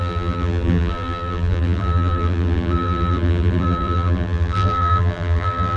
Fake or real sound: fake